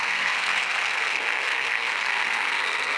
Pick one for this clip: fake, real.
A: fake